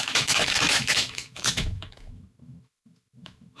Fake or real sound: fake